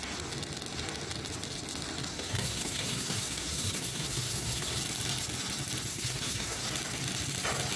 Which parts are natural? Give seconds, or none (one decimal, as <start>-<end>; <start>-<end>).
0.0-2.1; 4.8-5.9; 6.6-7.8